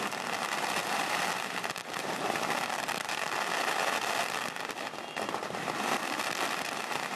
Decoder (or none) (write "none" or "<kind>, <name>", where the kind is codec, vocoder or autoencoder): vocoder, BigVGAN v2